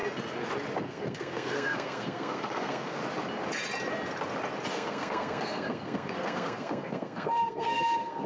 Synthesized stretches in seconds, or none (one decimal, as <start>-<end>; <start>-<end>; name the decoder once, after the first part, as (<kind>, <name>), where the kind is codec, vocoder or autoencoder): 0.8-3.0 (codec, SNAC); 4.7-8.3